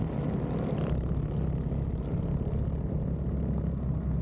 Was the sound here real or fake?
real